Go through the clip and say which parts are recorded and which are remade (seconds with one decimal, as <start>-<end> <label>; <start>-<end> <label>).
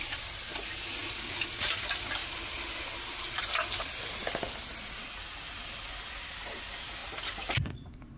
0.0-1.0 remade; 1.0-1.6 recorded; 1.6-2.2 remade; 2.2-6.2 recorded; 6.2-8.2 remade